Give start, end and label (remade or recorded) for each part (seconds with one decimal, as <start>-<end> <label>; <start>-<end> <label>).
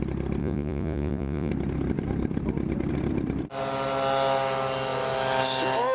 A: 0.0-0.4 recorded; 0.4-1.5 remade; 1.5-5.9 recorded